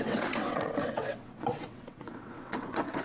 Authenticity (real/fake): fake